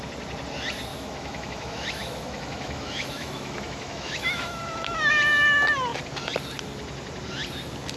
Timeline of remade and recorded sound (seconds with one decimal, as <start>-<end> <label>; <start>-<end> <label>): 0.0-0.9 recorded; 0.9-5.1 remade; 5.1-8.0 recorded